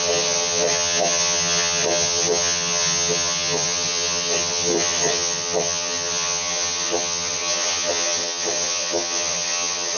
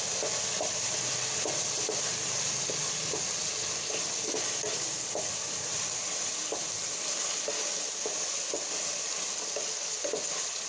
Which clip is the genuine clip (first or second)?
second